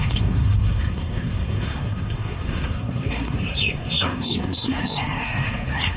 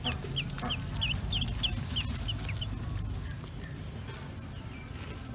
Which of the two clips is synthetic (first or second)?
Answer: first